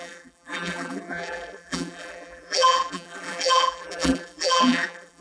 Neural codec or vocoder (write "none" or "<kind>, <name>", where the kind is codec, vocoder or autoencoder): vocoder, BigVGAN v2